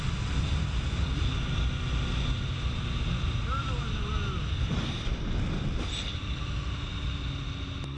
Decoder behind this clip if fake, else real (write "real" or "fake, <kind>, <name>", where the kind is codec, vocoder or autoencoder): real